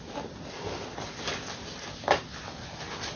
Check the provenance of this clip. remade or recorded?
recorded